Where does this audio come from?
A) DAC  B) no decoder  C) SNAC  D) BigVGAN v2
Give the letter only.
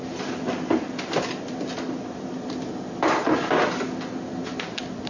B